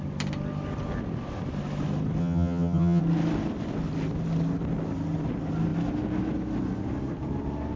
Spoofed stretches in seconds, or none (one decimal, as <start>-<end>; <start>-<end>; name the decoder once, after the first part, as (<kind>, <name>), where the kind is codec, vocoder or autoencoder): 2.2-3.0 (vocoder, HiFi-GAN)